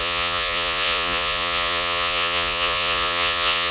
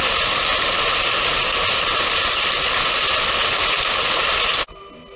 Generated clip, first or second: first